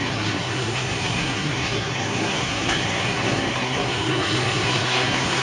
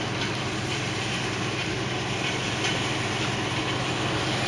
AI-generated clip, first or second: first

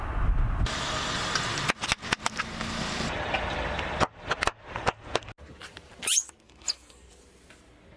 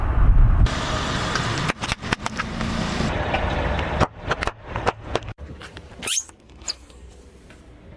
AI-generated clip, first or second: second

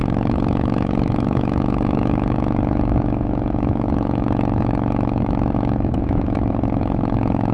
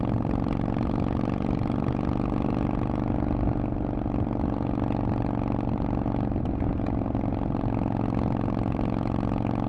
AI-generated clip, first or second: first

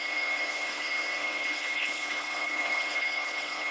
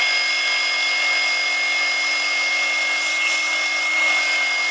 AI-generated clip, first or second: first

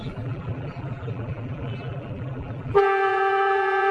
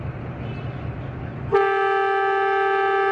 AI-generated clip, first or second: first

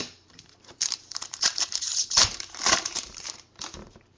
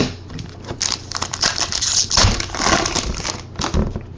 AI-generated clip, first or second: first